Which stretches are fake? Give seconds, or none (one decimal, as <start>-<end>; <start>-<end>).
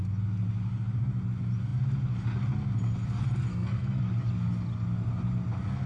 3.5-4.0